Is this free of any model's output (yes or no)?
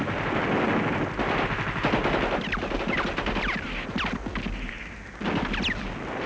yes